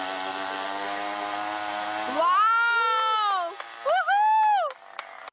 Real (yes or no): yes